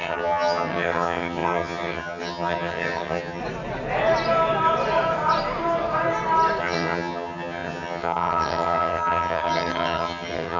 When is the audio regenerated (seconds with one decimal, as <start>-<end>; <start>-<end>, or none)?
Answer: 0.0-3.4; 6.6-10.6